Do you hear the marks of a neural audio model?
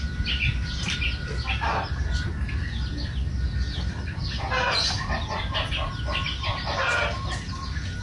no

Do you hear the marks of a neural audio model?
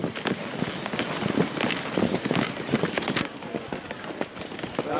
no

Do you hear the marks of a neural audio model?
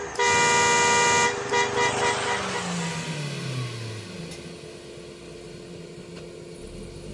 no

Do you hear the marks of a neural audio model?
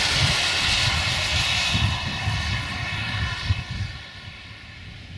no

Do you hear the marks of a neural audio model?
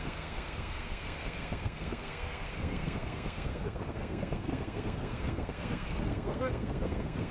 yes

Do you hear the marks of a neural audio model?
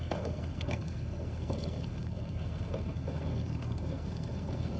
yes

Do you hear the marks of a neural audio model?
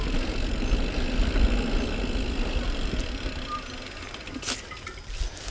no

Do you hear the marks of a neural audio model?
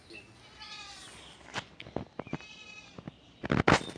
no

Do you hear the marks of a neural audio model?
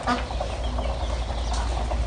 no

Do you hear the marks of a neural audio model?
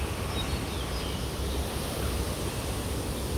no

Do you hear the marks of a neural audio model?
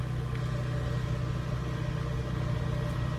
no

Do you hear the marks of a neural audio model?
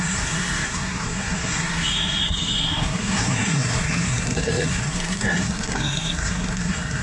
yes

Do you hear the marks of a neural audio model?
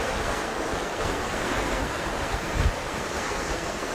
yes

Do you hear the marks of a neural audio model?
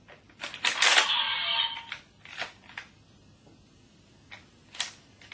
no